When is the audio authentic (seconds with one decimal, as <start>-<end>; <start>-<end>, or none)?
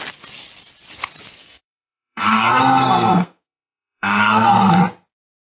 0.0-1.4; 4.8-5.6